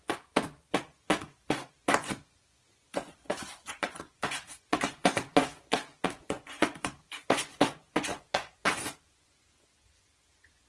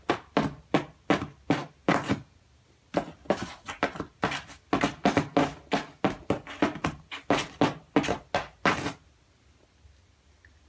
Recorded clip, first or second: second